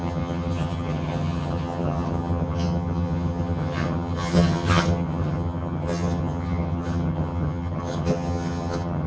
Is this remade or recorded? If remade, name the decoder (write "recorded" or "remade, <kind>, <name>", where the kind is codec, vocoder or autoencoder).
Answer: remade, vocoder, HiFi-GAN